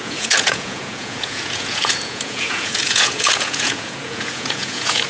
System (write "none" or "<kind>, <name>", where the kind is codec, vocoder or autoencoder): vocoder, Vocos